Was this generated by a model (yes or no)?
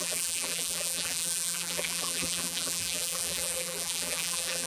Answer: yes